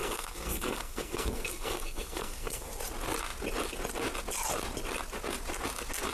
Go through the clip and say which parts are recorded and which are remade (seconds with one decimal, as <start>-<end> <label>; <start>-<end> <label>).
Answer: 0.0-2.7 remade; 2.7-6.1 recorded